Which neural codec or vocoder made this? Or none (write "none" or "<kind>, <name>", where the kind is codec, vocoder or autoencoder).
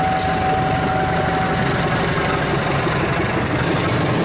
none